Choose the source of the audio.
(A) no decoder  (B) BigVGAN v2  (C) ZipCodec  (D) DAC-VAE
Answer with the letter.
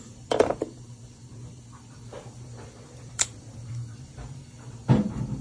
B